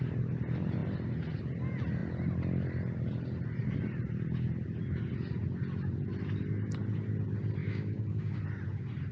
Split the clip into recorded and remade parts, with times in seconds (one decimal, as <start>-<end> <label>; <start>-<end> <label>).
0.0-7.6 recorded; 7.6-8.4 remade; 8.4-9.1 recorded